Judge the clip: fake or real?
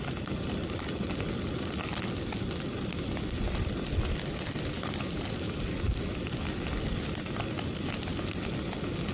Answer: real